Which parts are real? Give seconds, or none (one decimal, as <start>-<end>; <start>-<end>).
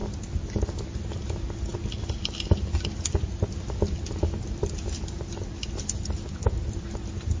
0.0-7.4